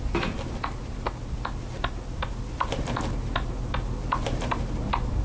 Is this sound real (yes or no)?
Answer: yes